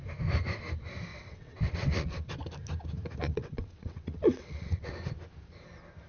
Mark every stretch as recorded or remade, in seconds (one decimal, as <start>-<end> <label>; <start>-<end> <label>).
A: 0.0-1.1 recorded; 1.1-2.3 remade; 2.3-3.2 recorded; 3.2-4.9 remade; 4.9-6.1 recorded